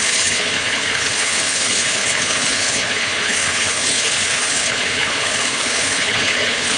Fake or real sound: fake